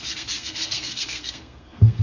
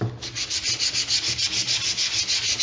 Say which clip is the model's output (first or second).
first